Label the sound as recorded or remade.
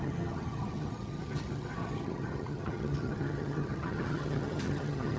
remade